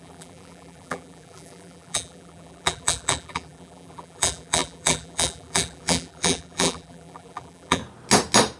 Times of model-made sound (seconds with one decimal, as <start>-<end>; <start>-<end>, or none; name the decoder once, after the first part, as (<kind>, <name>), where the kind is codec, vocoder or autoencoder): 0.0-7.8 (vocoder, BigVGAN v2)